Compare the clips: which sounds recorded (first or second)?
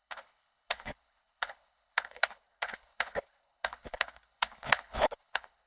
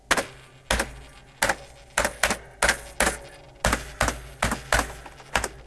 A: second